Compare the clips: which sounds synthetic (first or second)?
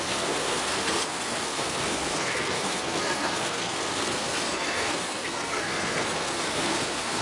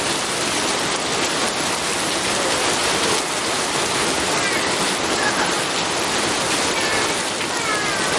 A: first